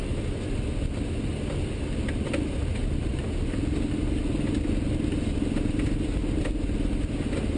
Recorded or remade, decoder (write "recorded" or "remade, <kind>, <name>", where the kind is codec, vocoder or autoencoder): recorded